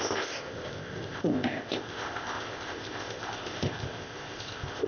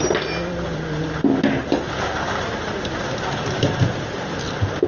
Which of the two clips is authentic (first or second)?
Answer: second